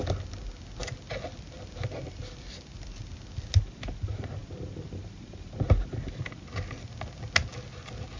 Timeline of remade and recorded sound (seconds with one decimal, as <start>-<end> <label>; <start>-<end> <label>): 0.0-8.2 recorded